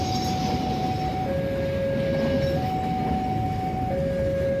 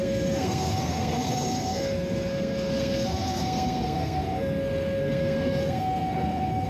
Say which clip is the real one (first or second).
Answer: first